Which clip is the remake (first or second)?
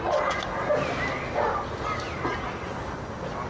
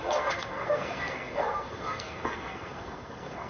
second